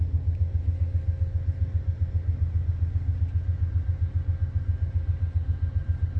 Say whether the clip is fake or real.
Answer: real